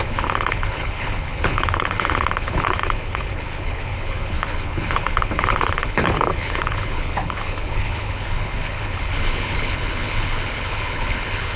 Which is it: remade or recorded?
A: remade